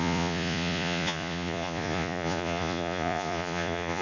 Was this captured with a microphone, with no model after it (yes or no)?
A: no